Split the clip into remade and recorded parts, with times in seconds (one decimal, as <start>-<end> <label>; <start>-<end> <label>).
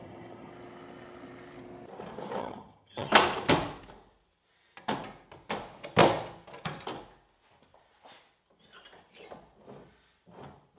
0.0-0.5 remade; 0.5-2.4 recorded; 2.4-3.1 remade; 3.1-10.8 recorded